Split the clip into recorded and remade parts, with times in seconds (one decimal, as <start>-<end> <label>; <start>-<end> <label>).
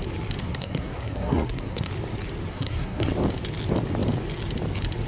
0.0-0.4 recorded; 0.4-1.9 remade; 1.9-2.5 recorded; 2.5-3.1 remade; 3.1-5.1 recorded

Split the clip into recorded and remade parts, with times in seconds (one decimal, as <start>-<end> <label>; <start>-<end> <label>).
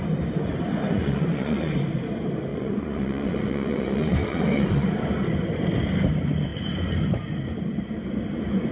0.0-0.8 recorded; 0.8-1.7 remade; 1.7-2.5 recorded; 2.5-4.9 remade; 4.9-8.7 recorded